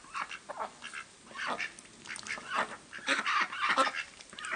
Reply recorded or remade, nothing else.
recorded